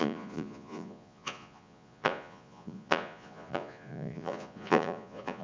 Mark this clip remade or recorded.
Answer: remade